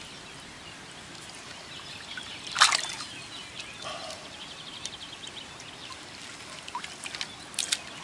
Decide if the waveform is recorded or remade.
recorded